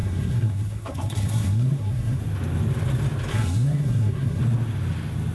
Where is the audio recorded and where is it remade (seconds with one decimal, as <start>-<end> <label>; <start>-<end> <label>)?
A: 0.0-2.2 remade; 2.2-3.3 recorded; 3.3-4.4 remade; 4.4-5.3 recorded